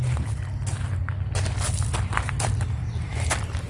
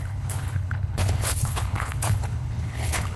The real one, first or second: first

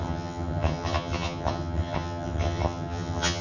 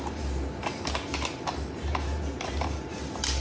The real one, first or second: second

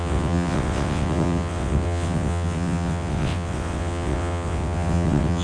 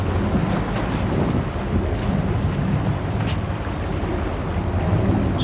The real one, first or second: second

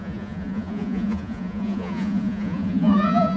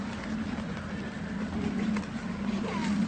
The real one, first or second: second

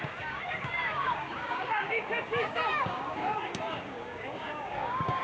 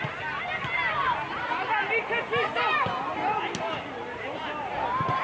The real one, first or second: second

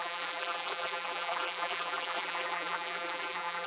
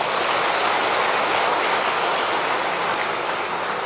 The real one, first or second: second